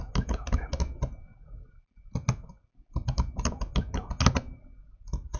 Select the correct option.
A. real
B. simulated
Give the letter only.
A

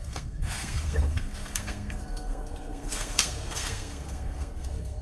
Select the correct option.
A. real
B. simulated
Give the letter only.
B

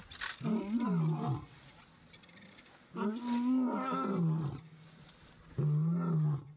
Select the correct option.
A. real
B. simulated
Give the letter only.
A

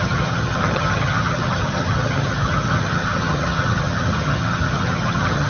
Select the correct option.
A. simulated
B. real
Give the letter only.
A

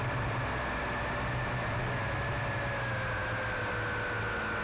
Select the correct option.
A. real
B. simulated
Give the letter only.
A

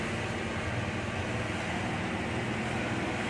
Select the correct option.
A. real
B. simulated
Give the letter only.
A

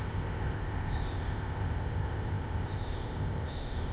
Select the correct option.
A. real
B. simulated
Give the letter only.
B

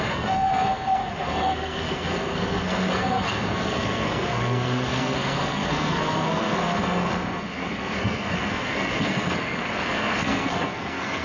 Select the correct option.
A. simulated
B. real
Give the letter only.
A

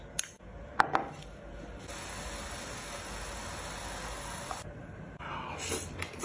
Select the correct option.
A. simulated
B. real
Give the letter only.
B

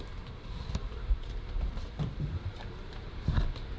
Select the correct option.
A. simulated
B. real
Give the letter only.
A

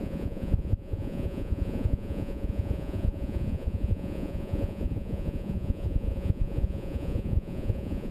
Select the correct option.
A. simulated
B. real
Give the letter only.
A